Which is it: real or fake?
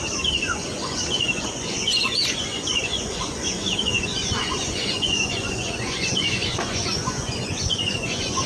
fake